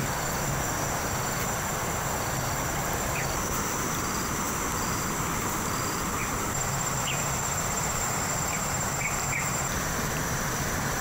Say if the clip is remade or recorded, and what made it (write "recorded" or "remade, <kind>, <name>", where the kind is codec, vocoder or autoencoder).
remade, vocoder, BigVGAN v2